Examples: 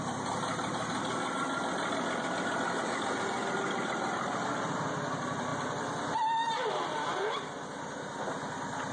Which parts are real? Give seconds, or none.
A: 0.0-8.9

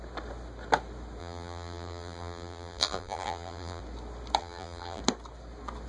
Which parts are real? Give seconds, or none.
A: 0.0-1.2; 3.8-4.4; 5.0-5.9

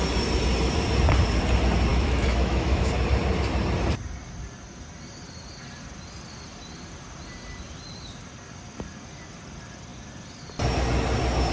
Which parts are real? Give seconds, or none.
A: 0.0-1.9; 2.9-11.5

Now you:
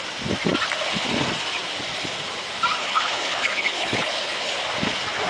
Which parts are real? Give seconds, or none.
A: 0.0-2.8; 4.5-5.3